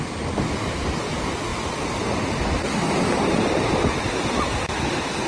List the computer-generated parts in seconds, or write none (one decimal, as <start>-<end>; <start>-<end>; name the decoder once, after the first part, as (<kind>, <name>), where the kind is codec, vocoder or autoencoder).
none